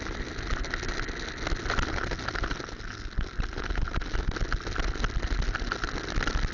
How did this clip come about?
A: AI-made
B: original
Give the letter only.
B